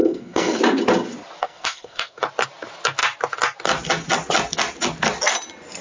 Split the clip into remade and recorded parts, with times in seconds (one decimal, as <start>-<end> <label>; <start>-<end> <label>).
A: 0.0-0.6 remade; 0.6-1.4 recorded; 1.4-2.2 remade; 2.2-5.8 recorded